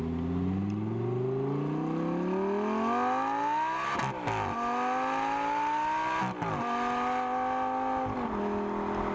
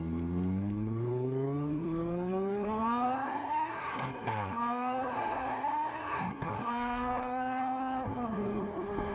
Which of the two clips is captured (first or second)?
first